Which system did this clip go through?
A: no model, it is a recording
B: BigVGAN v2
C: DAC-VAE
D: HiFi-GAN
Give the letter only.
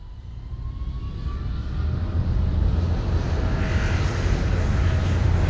A